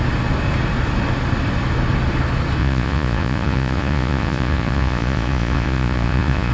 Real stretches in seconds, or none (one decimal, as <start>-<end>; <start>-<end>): 0.0-2.6